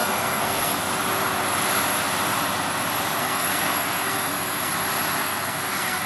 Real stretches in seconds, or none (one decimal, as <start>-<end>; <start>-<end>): 0.8-3.2; 4.7-5.2